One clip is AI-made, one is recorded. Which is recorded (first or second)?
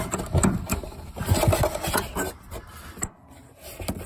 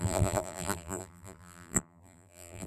first